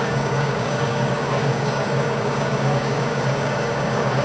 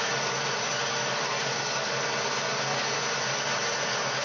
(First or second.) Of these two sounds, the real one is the second